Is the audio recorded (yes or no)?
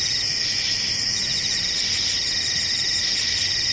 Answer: yes